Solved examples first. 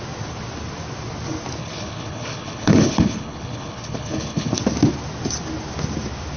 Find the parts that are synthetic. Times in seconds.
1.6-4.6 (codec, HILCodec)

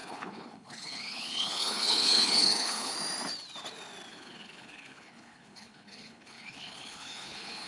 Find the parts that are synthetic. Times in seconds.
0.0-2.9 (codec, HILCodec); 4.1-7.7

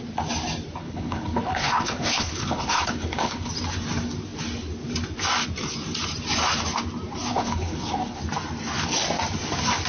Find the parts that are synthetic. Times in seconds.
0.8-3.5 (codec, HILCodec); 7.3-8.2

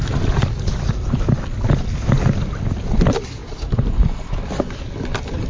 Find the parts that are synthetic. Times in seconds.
none

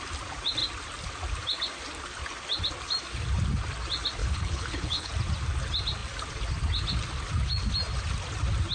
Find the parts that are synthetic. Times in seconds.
4.2-5.1 (codec, HILCodec)